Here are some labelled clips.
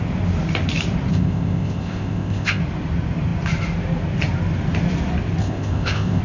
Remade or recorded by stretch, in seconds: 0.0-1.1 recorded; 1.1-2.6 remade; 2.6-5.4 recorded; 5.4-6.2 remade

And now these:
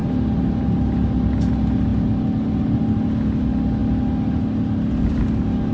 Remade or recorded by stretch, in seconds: 0.0-5.7 recorded

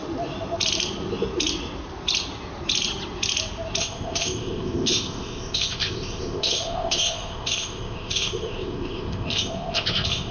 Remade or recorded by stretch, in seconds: 0.0-3.8 recorded; 3.8-10.3 remade